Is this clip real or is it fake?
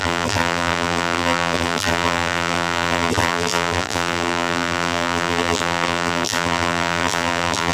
fake